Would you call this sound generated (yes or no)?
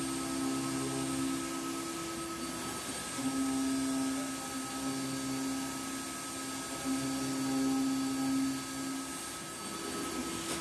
no